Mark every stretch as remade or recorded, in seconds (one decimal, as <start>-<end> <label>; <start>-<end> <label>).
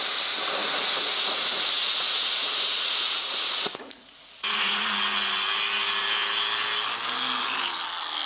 0.0-0.6 recorded; 0.6-4.9 remade; 4.9-8.3 recorded